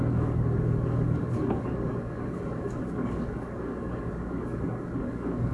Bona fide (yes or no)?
no